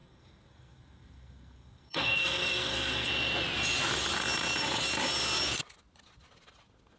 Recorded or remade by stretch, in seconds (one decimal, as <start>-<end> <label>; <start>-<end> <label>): 0.0-3.1 remade; 3.1-7.0 recorded